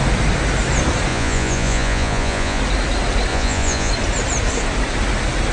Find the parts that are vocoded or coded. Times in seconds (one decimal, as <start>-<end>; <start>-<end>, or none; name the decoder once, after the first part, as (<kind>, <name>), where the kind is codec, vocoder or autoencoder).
1.1-2.6 (vocoder, Vocos); 3.3-3.9